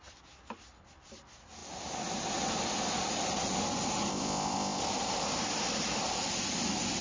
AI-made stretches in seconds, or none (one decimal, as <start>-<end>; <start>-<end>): 4.1-4.8